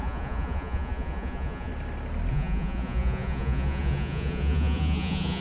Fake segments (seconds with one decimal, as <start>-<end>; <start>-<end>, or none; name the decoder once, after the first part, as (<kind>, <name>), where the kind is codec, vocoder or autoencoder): 0.0-1.7 (vocoder, Vocos); 2.3-5.4

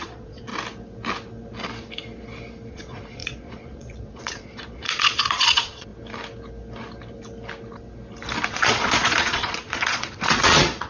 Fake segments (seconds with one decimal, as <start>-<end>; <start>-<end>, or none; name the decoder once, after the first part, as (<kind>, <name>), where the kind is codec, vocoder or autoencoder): 0.0-0.5 (vocoder, Vocos); 2.7-5.9; 8.5-10.9

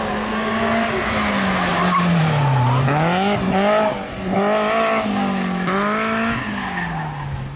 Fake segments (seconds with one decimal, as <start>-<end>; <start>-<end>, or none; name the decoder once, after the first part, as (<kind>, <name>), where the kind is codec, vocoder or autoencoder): none